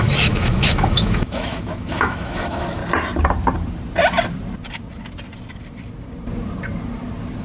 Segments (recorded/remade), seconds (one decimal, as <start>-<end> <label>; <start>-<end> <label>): 0.0-2.8 remade; 2.8-7.4 recorded